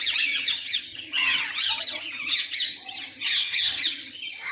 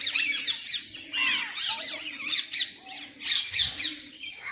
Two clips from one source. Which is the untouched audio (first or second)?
second